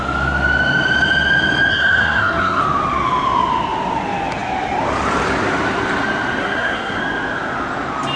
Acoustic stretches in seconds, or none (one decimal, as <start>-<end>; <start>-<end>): 0.0-1.7; 2.6-6.4; 7.0-8.2